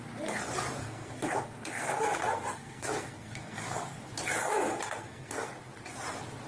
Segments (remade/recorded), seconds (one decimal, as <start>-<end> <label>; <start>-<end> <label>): 0.0-0.8 recorded; 0.8-4.0 remade; 4.0-4.4 recorded; 4.4-5.5 remade; 5.5-6.5 recorded